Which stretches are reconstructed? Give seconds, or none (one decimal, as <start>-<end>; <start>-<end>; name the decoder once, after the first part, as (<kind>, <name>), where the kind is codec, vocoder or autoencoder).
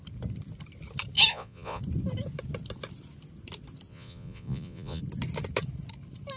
1.3-1.8 (vocoder, Vocos); 3.9-5.0